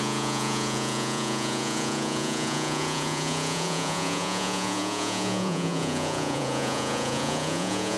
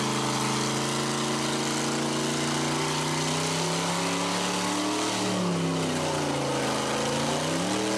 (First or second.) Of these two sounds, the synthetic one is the first